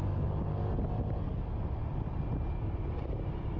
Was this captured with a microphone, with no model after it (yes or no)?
yes